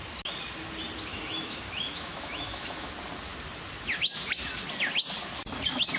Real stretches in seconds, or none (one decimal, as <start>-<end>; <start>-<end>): 0.0-1.1; 2.9-6.0